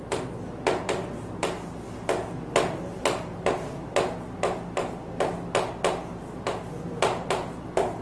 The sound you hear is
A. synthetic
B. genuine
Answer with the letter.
B